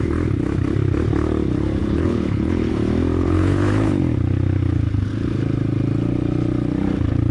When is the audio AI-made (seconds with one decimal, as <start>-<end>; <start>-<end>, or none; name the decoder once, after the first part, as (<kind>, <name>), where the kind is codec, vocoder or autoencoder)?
1.8-2.7 (codec, HILCodec); 3.2-4.0